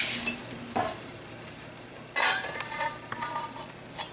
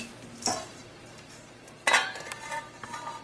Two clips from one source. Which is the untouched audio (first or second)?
second